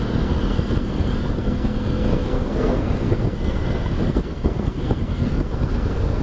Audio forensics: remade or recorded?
remade